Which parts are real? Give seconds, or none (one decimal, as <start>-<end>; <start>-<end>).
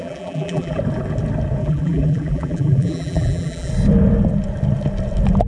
0.8-1.6; 3.7-5.5